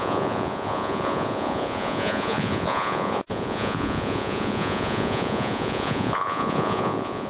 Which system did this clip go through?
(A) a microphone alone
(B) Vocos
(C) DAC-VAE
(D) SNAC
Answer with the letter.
B